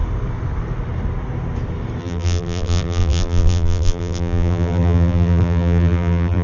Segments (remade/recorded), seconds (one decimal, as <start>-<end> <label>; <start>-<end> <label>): 0.0-2.0 recorded; 2.0-6.4 remade